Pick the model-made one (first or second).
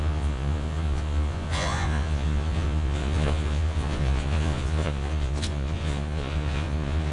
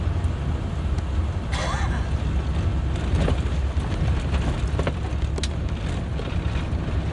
first